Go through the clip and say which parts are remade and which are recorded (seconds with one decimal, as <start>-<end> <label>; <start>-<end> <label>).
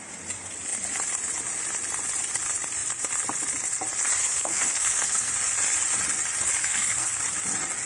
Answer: 0.0-4.2 recorded; 4.2-5.3 remade; 5.3-6.6 recorded; 6.6-7.2 remade; 7.2-7.9 recorded